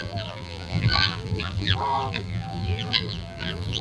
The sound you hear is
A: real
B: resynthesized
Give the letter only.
B